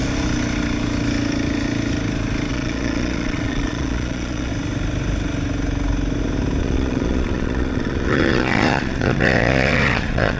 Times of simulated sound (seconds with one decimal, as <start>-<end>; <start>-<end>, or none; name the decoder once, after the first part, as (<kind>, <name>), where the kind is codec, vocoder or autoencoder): 2.5-4.5 (vocoder, Vocos); 6.6-10.4